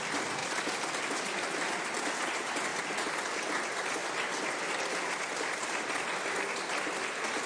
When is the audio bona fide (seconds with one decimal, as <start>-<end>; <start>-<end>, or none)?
0.0-0.4; 1.0-2.7; 3.2-7.5